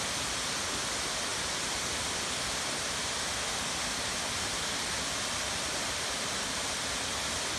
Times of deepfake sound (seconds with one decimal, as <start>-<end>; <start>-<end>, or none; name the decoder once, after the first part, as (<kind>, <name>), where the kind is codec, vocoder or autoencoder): none